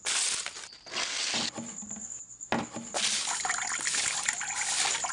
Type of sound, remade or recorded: recorded